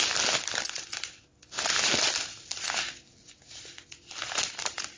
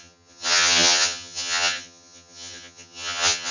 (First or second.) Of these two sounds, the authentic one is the first